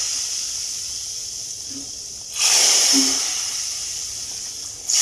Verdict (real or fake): real